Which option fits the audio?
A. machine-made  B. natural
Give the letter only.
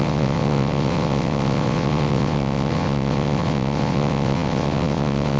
A